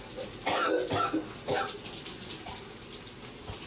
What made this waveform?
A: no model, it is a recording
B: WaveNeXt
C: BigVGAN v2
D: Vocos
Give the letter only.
A